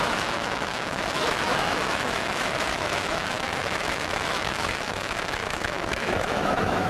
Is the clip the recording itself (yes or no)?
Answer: no